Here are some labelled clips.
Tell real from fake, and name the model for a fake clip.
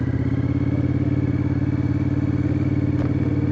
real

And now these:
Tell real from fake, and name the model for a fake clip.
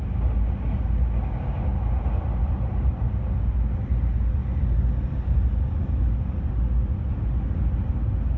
real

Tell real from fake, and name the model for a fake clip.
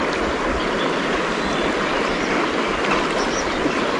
real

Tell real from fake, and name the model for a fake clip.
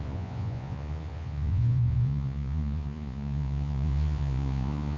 fake, vocoder, Vocos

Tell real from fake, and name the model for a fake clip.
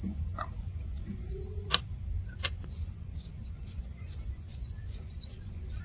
fake, vocoder, Vocos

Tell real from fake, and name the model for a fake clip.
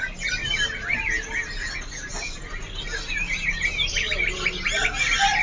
real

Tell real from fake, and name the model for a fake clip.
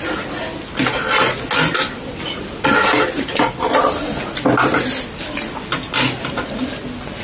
real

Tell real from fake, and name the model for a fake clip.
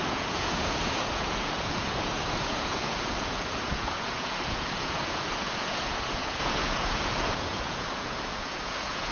fake, vocoder, Vocos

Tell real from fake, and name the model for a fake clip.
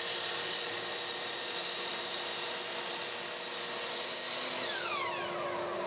real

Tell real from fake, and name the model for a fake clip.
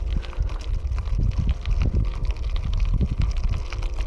real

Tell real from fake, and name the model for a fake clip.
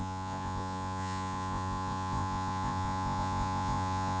fake, vocoder, Vocos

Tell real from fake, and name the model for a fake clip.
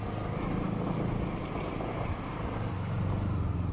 real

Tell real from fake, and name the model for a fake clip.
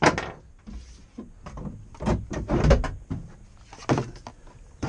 real